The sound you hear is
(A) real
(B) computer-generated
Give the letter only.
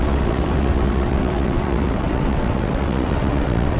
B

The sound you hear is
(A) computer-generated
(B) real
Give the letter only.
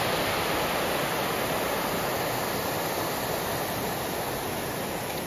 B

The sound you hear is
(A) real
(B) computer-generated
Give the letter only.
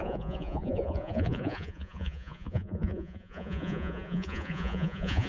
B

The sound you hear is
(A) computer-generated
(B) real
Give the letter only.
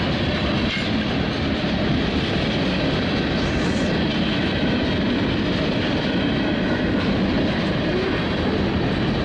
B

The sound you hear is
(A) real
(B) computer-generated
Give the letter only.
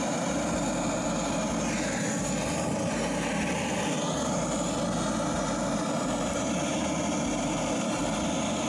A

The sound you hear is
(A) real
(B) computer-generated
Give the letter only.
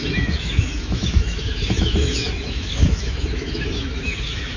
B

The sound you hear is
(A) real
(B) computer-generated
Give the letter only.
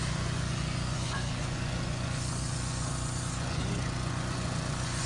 B